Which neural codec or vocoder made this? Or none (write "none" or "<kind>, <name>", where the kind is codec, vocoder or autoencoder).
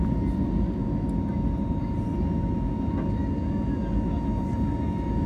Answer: none